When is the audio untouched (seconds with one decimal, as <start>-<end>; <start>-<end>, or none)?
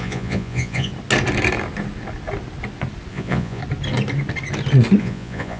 0.9-3.1; 3.6-5.0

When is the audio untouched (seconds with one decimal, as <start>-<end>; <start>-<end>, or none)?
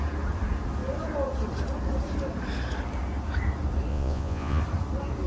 0.0-3.9; 4.6-5.3